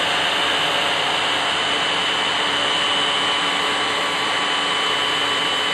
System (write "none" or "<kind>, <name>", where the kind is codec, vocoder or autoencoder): none